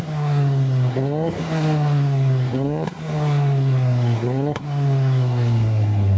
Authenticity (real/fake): fake